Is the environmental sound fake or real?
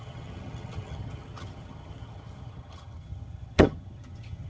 fake